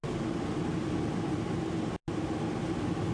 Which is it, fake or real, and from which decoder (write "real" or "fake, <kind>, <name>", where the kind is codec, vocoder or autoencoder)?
real